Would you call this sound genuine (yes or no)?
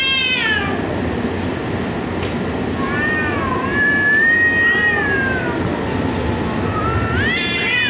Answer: yes